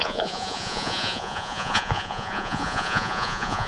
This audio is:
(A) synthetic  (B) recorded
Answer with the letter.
A